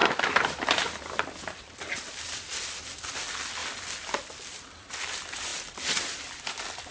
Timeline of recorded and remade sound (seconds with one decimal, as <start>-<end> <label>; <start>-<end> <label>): 0.0-3.1 remade; 3.1-6.9 recorded